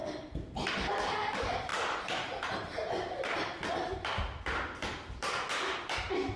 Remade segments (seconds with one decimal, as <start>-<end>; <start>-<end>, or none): 0.9-6.4